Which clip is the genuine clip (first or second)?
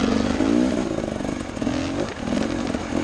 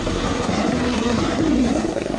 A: first